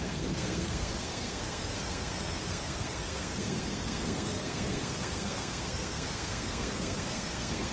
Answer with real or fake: fake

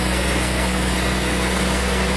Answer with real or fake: fake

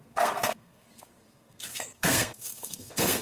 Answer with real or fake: fake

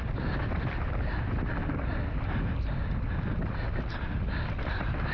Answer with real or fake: real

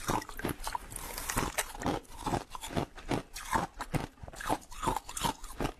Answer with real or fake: real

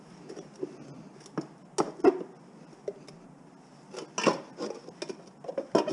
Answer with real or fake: real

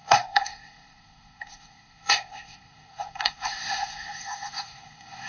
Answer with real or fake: fake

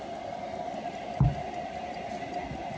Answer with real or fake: real